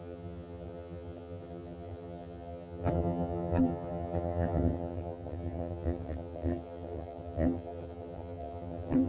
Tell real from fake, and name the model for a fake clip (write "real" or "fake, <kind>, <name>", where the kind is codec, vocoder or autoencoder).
fake, vocoder, HiFi-GAN